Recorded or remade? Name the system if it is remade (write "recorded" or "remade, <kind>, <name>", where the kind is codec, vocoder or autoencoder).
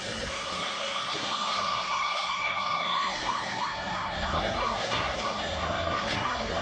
remade, codec, SNAC